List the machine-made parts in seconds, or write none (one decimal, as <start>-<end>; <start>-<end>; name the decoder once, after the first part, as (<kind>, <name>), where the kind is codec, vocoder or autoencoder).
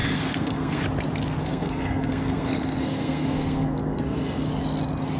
0.0-0.8 (codec, SNAC); 1.4-4.5